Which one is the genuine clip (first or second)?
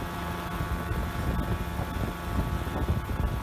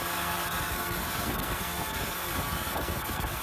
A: first